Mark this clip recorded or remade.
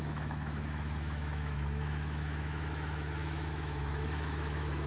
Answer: remade